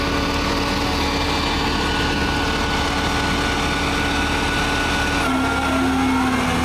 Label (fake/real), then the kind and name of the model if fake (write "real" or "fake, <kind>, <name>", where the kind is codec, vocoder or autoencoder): real